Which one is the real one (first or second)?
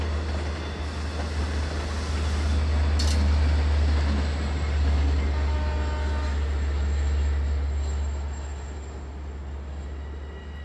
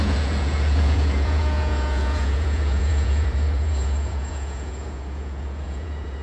first